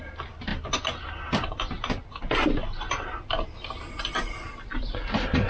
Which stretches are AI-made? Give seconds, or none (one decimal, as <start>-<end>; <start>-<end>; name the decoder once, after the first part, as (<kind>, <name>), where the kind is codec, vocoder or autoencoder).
none